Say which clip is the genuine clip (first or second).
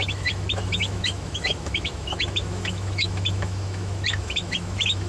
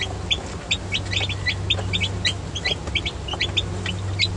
second